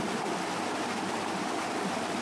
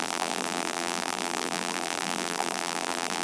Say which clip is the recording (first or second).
first